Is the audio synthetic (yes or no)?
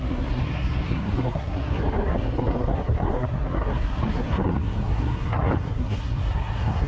yes